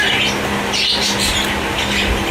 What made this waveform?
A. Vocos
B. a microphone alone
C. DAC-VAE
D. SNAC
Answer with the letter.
B